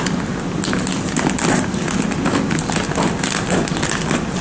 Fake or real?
real